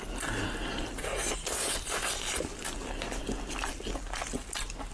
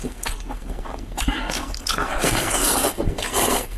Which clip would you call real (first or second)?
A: first